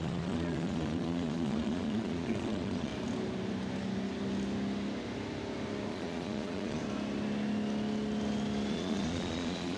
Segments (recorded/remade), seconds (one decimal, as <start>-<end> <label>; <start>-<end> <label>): 0.0-2.9 remade; 2.9-5.9 recorded; 5.9-6.8 remade; 6.8-8.7 recorded; 8.7-9.8 remade